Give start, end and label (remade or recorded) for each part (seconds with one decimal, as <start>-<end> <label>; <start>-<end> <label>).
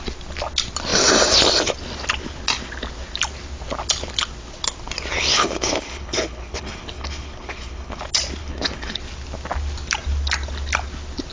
0.0-5.3 recorded; 5.3-8.0 remade; 8.0-8.4 recorded; 8.4-9.0 remade; 9.0-11.3 recorded